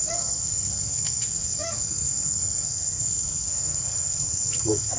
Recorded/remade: remade